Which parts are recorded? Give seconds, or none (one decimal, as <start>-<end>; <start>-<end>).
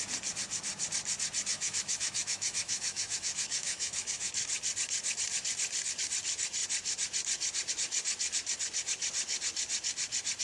0.0-1.5; 4.3-10.4